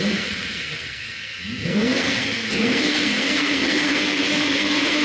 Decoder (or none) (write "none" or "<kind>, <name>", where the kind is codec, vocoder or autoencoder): codec, SNAC